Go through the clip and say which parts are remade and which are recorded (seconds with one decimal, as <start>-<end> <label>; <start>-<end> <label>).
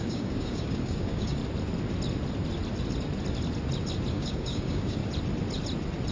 0.0-1.4 remade; 1.4-4.1 recorded; 4.1-5.0 remade; 5.0-6.1 recorded